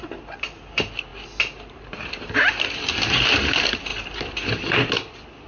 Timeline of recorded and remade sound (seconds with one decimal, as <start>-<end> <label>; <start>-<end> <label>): 0.0-5.5 recorded